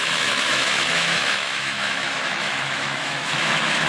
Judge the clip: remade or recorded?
remade